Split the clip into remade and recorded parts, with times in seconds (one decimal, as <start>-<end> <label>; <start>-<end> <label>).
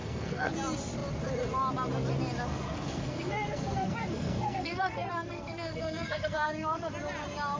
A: 0.0-0.5 remade; 0.5-2.5 recorded; 2.5-6.9 remade; 6.9-7.6 recorded